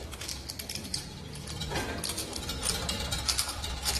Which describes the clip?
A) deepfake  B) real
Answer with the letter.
A